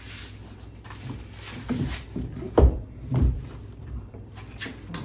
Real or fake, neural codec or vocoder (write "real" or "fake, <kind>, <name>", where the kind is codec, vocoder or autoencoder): real